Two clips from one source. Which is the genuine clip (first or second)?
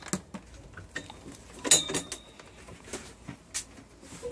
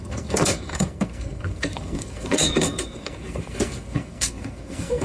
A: first